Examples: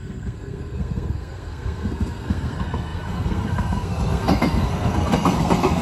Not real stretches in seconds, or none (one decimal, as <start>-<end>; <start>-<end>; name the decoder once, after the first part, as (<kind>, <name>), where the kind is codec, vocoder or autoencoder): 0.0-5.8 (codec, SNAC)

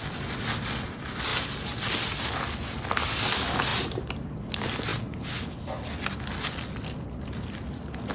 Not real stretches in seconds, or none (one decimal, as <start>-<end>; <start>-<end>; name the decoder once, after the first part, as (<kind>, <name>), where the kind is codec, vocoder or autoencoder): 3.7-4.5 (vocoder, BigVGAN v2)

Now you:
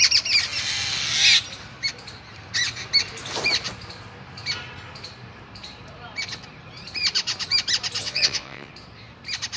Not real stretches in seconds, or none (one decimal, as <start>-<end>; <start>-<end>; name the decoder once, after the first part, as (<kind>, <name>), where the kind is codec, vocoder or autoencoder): 8.0-8.7 (vocoder, WaveNeXt)